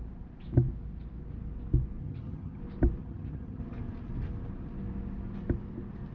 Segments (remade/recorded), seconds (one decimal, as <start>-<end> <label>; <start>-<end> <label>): 0.0-2.0 recorded; 2.0-2.6 remade; 2.6-3.0 recorded; 3.0-3.6 remade; 3.6-6.1 recorded